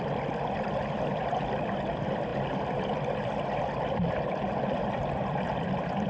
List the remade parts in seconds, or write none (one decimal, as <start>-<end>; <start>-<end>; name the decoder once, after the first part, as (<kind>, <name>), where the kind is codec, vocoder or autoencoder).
none